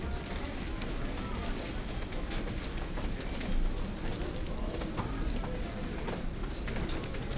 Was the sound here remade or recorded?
recorded